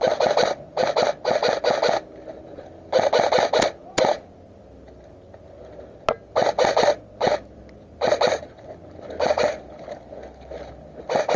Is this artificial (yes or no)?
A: no